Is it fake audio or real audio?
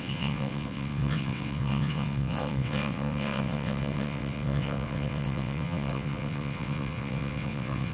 fake